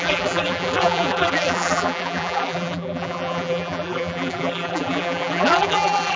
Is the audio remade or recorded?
remade